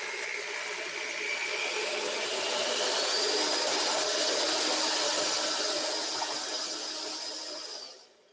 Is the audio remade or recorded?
recorded